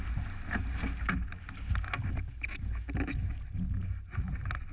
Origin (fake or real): real